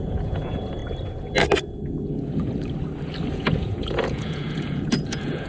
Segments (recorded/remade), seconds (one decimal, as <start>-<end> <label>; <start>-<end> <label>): 0.0-0.8 remade; 0.8-3.3 recorded; 3.3-5.5 remade